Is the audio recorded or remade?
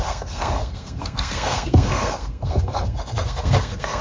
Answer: remade